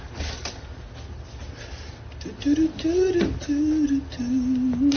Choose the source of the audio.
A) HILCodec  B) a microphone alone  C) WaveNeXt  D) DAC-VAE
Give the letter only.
B